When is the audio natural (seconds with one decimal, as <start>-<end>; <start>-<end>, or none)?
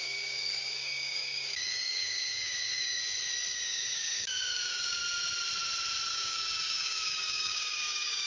3.0-3.5; 5.0-6.1